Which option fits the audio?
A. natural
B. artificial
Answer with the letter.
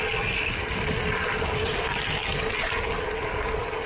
A